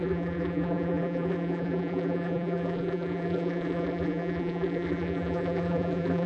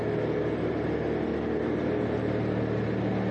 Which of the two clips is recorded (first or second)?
second